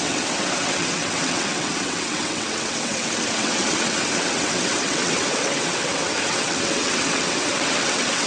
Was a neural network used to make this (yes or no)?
yes